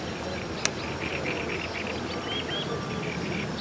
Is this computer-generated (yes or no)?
no